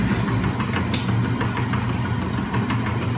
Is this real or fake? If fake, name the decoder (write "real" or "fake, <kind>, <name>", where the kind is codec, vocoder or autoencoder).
real